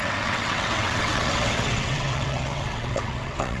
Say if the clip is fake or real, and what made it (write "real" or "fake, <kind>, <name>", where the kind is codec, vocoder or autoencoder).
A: fake, vocoder, WaveNeXt